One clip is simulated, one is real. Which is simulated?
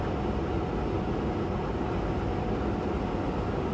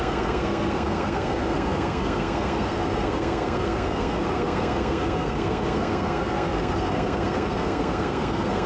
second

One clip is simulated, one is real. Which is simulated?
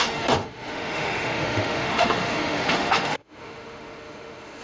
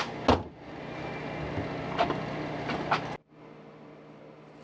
first